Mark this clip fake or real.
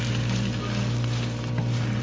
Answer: real